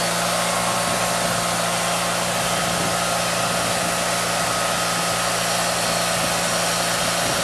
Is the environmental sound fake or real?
real